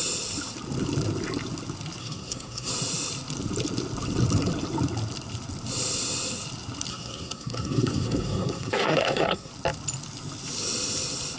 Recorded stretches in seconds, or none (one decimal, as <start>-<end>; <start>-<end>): 0.0-2.0; 2.7-6.9; 9.5-11.4